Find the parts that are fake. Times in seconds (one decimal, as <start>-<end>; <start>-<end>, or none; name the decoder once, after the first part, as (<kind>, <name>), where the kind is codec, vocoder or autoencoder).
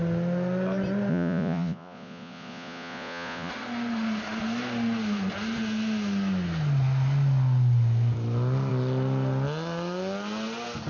1.1-3.5 (vocoder, Vocos)